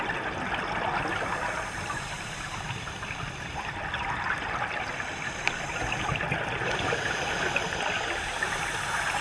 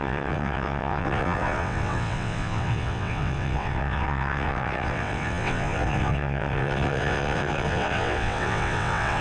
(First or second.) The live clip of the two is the first